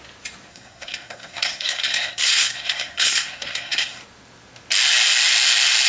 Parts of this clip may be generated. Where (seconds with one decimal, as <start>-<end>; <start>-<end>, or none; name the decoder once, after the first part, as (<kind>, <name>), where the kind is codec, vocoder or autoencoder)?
0.5-4.0 (codec, SNAC)